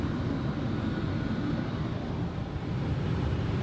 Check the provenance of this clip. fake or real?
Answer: real